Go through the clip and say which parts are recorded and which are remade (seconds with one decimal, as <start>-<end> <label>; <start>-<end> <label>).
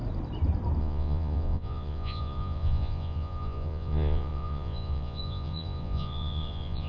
0.0-0.8 recorded; 0.8-6.9 remade